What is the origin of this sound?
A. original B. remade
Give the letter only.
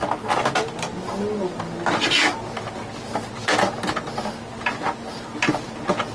A